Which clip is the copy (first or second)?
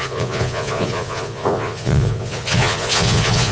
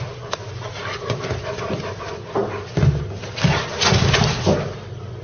first